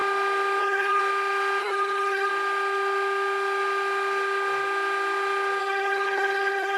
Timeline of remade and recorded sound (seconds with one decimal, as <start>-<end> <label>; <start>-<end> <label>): 0.0-0.6 recorded; 0.6-1.0 remade; 1.0-1.6 recorded; 1.6-2.3 remade; 2.3-5.6 recorded; 5.6-6.8 remade